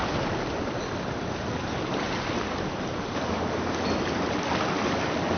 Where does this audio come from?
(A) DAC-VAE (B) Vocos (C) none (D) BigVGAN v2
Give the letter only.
C